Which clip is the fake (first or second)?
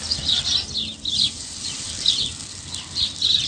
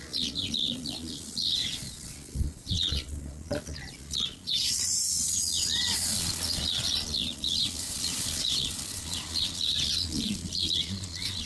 second